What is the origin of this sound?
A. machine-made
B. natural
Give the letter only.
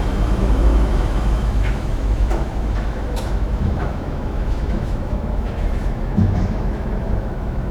A